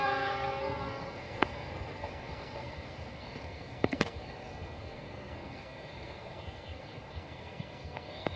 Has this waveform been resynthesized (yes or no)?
yes